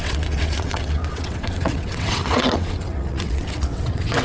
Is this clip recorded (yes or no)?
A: no